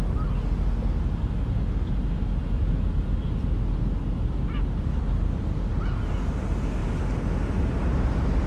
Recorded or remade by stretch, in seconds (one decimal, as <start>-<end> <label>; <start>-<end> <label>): 0.0-8.5 recorded